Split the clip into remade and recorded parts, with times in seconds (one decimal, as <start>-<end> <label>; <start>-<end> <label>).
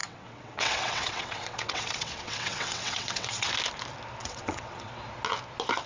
0.0-3.5 remade; 3.5-4.2 recorded; 4.2-4.9 remade; 4.9-5.9 recorded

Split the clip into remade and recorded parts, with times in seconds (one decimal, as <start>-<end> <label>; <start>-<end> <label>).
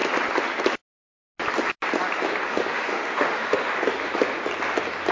0.0-2.5 recorded; 2.5-3.7 remade; 3.7-5.1 recorded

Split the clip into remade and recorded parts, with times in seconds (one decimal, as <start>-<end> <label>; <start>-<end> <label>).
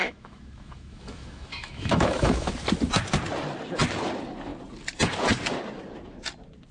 0.0-2.5 remade; 2.5-6.7 recorded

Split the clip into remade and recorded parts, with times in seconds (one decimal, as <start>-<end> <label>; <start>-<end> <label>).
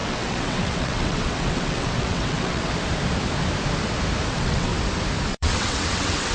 0.0-2.7 remade; 2.7-4.3 recorded; 4.3-4.7 remade; 4.7-5.3 recorded; 5.3-6.3 remade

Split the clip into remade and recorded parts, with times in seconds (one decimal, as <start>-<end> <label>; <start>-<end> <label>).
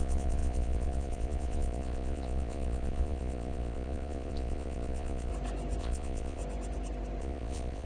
0.0-5.3 remade; 5.3-5.8 recorded; 5.8-6.4 remade; 6.4-7.2 recorded; 7.2-7.9 remade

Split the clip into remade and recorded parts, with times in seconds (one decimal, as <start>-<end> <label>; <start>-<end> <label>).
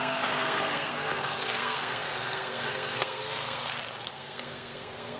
0.0-5.2 remade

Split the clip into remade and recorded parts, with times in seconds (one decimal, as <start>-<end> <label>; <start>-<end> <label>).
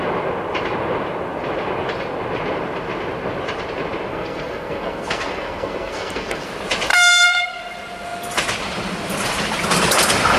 0.0-4.1 recorded; 4.1-6.5 remade; 6.5-6.9 recorded; 6.9-7.6 remade; 7.6-10.4 recorded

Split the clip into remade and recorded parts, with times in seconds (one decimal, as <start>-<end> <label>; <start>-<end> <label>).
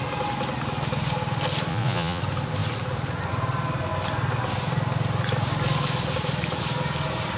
0.0-1.7 recorded; 1.7-2.2 remade; 2.2-7.4 recorded